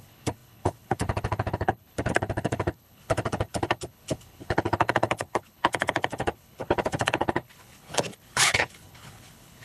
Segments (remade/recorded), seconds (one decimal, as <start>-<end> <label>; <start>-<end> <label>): 0.0-9.6 remade